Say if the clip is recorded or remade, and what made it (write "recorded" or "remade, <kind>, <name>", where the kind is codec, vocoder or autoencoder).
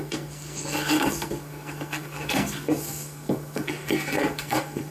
remade, codec, SNAC